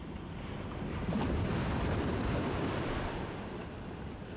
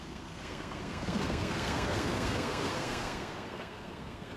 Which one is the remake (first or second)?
second